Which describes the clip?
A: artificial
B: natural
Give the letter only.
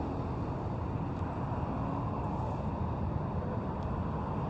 B